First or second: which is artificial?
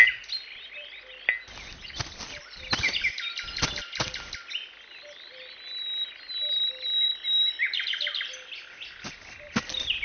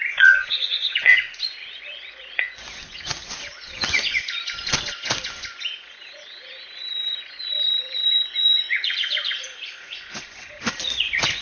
second